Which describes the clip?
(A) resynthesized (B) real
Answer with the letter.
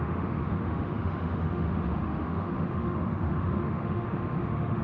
A